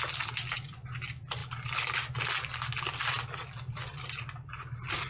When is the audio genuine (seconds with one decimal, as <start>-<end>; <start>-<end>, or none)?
1.4-3.0